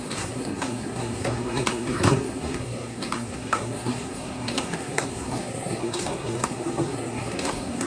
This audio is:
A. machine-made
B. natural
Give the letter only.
A